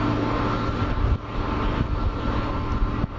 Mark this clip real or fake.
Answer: real